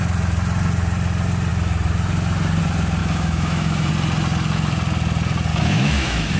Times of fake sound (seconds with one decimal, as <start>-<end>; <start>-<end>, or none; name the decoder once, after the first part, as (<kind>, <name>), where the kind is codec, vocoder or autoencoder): 3.0-3.9 (autoencoder, DAC-VAE); 5.5-6.4